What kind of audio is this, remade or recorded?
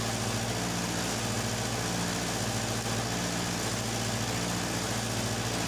recorded